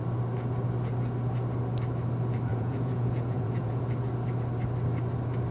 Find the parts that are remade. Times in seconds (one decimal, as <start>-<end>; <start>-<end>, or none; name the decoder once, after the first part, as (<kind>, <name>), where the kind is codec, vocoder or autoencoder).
2.5-3.8 (vocoder, Vocos)